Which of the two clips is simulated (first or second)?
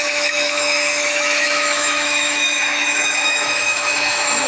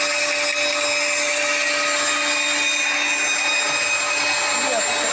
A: first